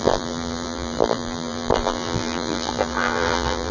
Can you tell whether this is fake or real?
fake